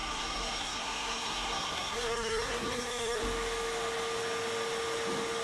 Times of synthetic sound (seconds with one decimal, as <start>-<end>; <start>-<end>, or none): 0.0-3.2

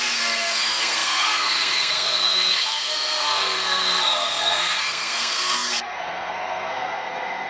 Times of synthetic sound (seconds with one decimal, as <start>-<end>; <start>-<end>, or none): 0.0-7.5

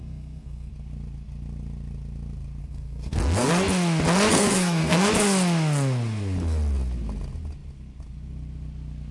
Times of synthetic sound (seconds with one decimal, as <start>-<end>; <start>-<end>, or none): 0.0-0.7; 2.6-3.5; 4.3-5.1

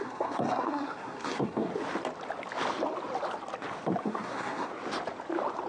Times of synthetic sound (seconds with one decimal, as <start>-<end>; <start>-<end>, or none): 0.0-1.7; 4.0-4.7

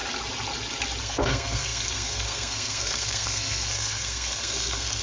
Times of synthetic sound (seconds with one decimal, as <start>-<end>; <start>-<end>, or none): 1.0-5.0

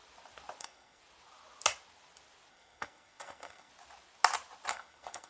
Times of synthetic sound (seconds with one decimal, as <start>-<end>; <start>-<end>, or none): 0.6-1.0; 2.5-3.7; 4.7-5.3

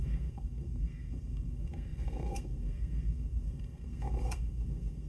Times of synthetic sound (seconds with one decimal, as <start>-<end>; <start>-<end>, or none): 0.0-5.1